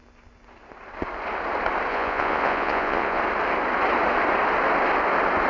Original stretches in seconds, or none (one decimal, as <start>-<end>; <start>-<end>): 0.0-1.9; 3.2-5.5